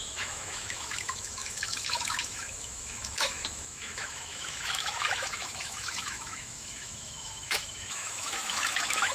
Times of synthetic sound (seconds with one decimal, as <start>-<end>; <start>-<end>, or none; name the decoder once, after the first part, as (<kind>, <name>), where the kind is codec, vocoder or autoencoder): 0.0-9.1 (autoencoder, DAC-VAE)